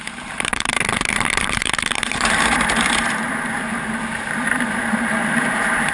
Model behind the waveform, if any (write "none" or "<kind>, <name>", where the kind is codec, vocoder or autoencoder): vocoder, BigVGAN v2